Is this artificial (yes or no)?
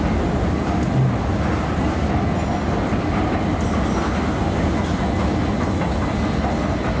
no